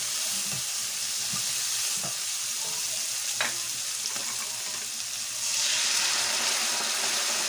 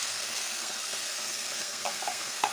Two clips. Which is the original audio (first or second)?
first